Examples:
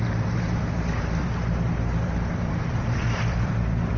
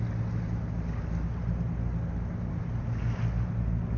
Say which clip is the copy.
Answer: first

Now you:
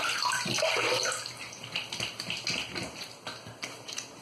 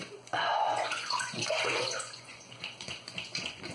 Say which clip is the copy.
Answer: second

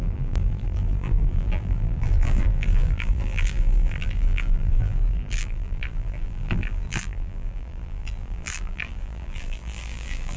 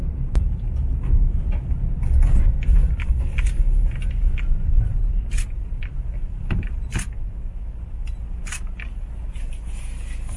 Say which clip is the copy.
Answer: first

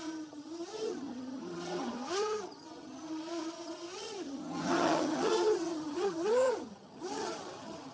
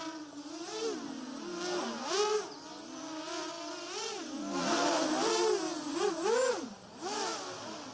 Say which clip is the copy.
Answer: first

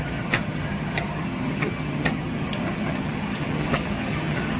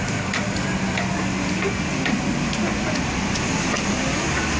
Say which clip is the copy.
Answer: first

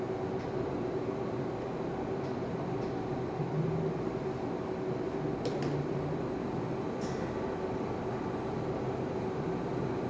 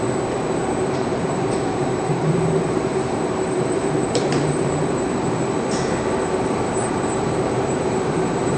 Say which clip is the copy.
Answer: second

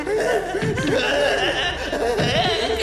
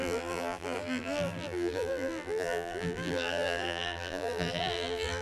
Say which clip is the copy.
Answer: second